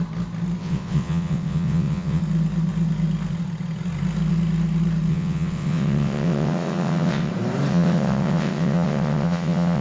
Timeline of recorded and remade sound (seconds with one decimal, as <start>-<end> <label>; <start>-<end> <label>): 0.0-0.6 recorded; 0.6-2.2 remade; 2.2-5.1 recorded; 5.1-7.3 remade; 7.3-7.7 recorded; 7.7-9.8 remade